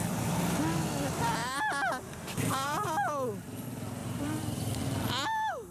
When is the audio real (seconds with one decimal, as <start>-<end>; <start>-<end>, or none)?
0.0-1.4; 3.1-4.0; 4.8-5.7